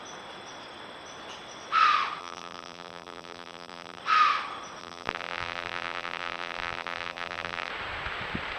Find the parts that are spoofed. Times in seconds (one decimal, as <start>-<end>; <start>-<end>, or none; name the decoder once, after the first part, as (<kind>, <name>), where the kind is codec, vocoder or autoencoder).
2.2-4.0 (vocoder, BigVGAN v2); 4.8-7.7